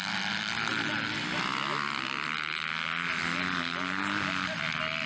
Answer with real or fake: real